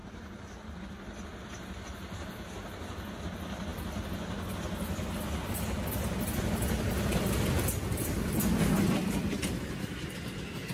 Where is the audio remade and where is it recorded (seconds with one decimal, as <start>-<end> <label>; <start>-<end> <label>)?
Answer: 0.0-0.8 remade; 0.8-10.7 recorded